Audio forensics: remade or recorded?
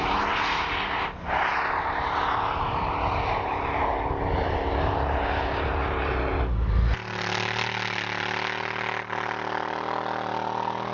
recorded